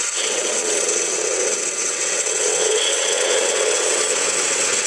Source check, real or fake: fake